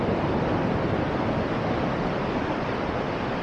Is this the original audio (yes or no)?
yes